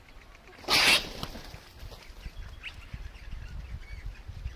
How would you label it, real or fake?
real